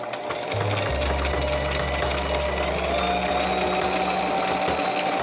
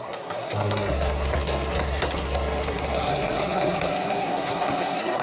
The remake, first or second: second